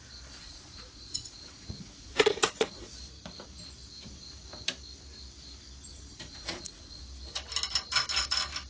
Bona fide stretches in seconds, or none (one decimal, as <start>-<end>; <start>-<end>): 0.0-0.4; 2.9-5.9; 7.0-8.7